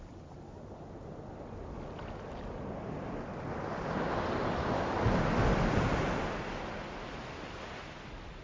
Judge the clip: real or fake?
real